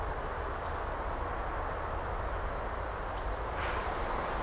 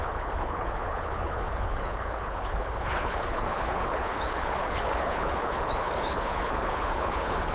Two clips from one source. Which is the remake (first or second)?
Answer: second